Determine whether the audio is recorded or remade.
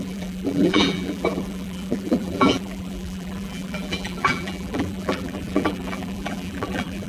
remade